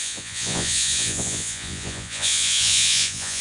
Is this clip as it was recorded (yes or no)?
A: no